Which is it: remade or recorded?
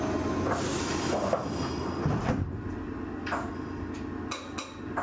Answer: recorded